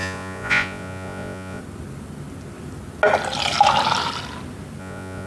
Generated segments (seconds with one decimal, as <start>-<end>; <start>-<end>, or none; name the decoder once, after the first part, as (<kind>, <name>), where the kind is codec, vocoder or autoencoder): 0.0-1.6 (vocoder, Vocos); 4.8-5.3